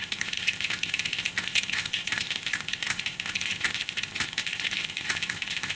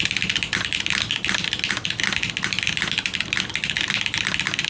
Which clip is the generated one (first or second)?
first